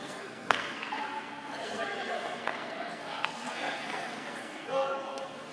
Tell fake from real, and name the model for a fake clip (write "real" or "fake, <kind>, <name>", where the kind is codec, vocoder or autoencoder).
fake, codec, SNAC